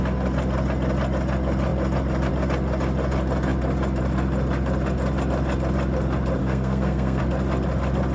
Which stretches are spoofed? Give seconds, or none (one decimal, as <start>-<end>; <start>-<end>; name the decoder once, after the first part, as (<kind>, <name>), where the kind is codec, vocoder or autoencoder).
6.4-7.2 (codec, SNAC)